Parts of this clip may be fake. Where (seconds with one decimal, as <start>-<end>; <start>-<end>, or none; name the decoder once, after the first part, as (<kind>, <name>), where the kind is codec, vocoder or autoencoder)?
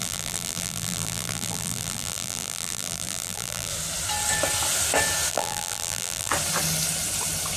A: 0.0-3.7 (vocoder, BigVGAN v2); 5.3-6.3